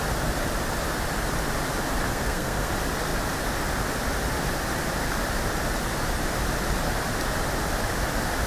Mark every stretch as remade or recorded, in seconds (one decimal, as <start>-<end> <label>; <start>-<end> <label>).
0.0-2.1 recorded; 2.1-2.7 remade; 2.7-8.5 recorded